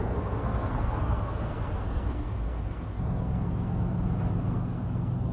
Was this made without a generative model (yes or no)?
no